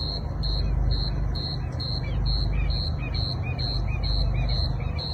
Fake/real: real